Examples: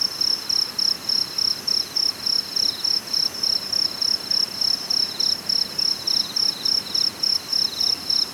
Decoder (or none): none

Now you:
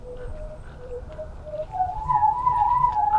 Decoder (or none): vocoder, BigVGAN v2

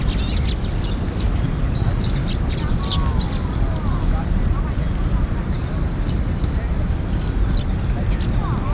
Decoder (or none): none